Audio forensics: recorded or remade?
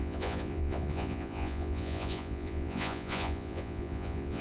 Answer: remade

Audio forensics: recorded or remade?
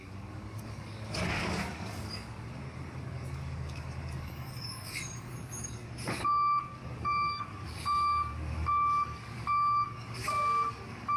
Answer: remade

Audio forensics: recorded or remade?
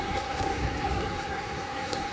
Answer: remade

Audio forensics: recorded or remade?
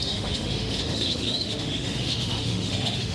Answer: remade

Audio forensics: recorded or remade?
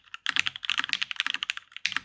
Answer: recorded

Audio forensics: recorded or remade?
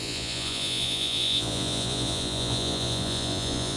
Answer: remade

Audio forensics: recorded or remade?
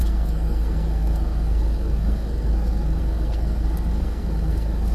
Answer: remade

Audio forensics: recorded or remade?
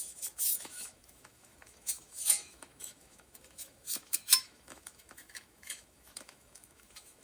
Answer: remade